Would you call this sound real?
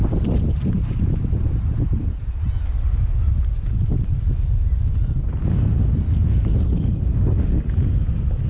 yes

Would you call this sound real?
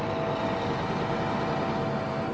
yes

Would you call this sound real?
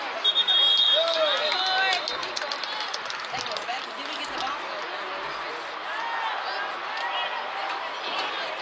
yes